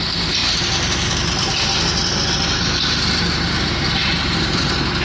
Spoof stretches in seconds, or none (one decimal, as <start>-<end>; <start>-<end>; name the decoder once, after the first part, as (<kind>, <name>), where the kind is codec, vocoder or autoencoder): 0.4-1.5 (vocoder, BigVGAN v2)